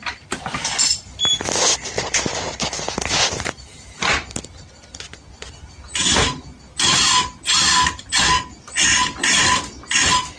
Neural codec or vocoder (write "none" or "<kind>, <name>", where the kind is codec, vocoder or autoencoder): none